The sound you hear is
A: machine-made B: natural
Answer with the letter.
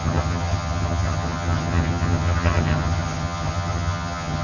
A